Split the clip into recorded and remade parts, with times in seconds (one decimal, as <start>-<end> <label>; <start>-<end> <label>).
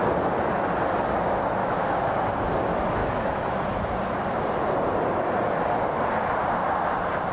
0.0-1.6 recorded; 1.6-2.2 remade; 2.2-3.0 recorded; 3.0-3.6 remade; 3.6-7.3 recorded